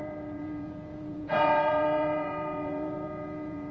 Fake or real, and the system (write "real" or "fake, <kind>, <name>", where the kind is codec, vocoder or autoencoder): fake, vocoder, Vocos